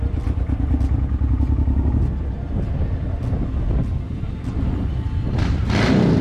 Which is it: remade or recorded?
recorded